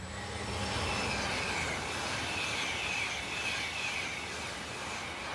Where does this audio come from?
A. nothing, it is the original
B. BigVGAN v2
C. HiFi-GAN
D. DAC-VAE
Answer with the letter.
A